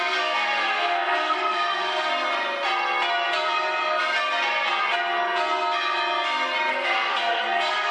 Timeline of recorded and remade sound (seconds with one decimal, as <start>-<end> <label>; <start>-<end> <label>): 0.0-2.1 remade; 2.1-6.7 recorded; 6.7-7.9 remade